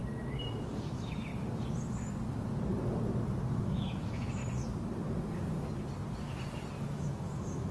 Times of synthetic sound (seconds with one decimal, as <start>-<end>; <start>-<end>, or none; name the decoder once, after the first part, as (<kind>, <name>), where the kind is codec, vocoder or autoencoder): 0.6-1.3 (autoencoder, DAC-VAE); 3.5-4.4; 6.8-7.7